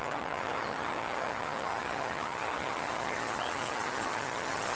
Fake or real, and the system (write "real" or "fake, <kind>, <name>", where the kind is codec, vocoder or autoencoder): fake, vocoder, HiFi-GAN